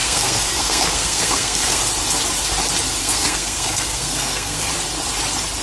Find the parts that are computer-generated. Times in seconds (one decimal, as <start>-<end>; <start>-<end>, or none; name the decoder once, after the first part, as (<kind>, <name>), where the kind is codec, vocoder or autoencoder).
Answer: 0.0-1.8 (codec, SNAC); 3.0-4.7